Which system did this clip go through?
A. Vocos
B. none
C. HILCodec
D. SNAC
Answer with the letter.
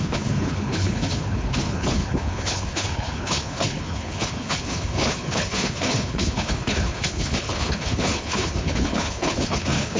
C